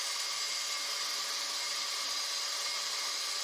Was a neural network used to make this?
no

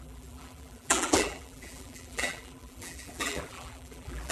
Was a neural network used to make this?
yes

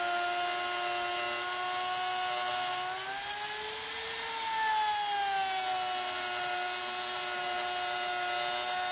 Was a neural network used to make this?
no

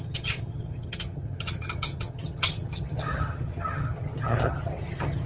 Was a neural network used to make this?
yes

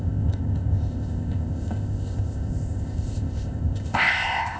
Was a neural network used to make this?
yes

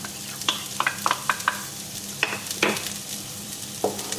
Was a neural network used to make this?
yes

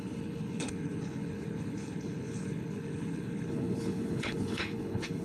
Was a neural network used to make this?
yes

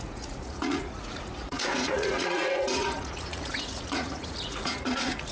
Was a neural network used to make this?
yes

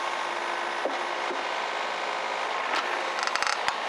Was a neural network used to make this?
no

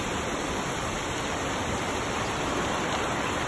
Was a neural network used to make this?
no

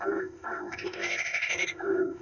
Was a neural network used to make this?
yes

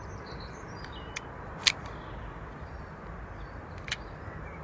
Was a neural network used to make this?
no